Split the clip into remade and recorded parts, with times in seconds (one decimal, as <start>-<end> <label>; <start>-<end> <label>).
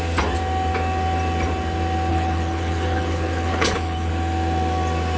0.0-2.1 recorded; 2.1-4.1 remade; 4.1-5.2 recorded